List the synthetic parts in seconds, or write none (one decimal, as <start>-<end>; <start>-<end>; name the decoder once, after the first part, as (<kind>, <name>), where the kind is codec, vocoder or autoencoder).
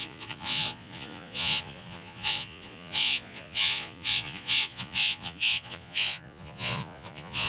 0.0-7.5 (vocoder, Vocos)